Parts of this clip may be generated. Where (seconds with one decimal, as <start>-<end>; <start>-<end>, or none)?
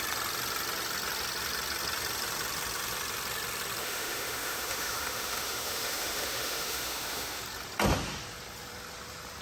3.8-7.4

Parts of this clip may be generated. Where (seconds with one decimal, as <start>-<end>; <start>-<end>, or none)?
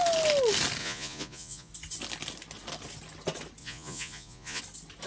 0.8-1.7; 3.6-4.6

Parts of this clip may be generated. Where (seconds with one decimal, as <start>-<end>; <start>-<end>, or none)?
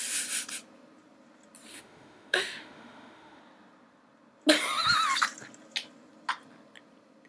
1.7-3.4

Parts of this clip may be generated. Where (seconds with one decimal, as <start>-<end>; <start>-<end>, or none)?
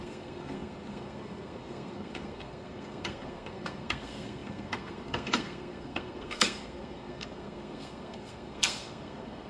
0.0-9.5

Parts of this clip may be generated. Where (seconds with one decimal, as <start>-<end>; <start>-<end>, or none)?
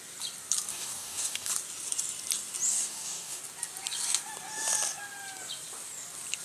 0.7-1.5; 2.7-3.4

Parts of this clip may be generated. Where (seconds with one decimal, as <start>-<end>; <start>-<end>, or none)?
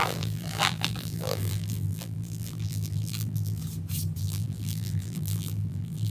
0.0-3.6; 4.2-6.1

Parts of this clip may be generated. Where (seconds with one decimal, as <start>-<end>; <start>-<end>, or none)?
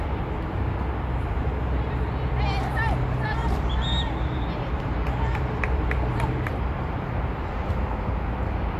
3.4-7.7